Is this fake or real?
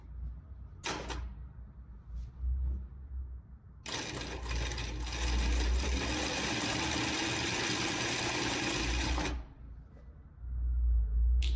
real